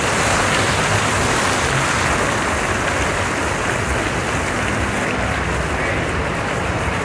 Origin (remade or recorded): recorded